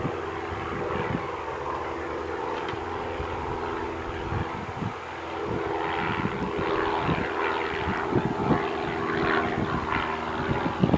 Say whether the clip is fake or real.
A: real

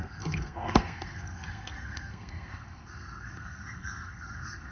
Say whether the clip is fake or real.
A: fake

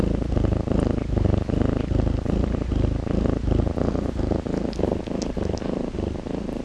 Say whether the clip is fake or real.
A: real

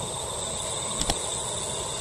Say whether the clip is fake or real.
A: real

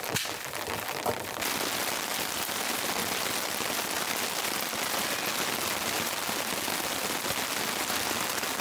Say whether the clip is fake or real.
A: real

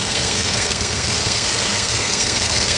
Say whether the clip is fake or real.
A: fake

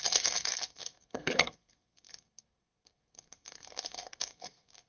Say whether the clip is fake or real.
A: fake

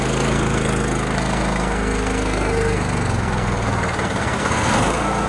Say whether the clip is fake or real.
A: fake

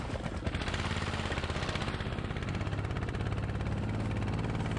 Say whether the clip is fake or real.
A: real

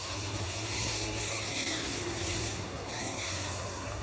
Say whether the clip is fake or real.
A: fake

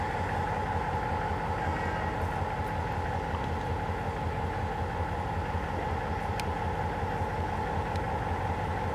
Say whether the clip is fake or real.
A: real